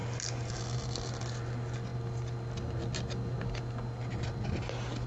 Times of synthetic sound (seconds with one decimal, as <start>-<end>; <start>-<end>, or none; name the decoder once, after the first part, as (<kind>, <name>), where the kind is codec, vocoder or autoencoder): none